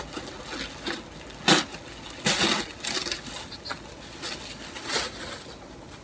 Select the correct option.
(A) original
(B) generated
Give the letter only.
A